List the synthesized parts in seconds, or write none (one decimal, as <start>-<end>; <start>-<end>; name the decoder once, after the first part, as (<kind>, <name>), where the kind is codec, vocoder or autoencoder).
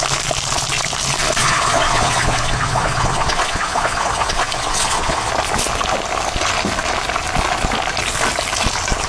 1.4-5.3 (vocoder, Vocos)